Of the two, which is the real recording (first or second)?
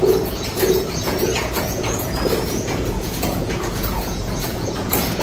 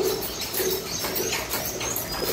second